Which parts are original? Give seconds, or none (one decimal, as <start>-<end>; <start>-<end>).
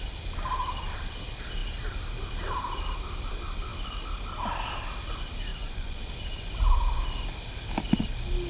0.0-5.5; 6.0-8.5